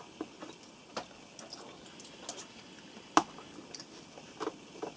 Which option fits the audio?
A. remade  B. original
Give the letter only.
B